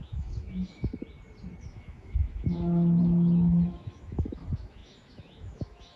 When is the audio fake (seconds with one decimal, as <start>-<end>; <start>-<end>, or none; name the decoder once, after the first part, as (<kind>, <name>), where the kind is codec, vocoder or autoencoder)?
0.0-0.9 (autoencoder, DAC-VAE); 1.6-6.0